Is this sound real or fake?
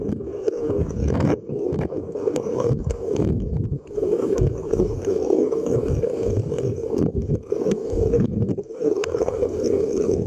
fake